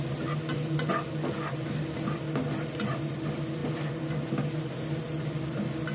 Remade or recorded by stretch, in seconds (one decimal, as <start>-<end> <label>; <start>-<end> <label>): 0.0-5.9 recorded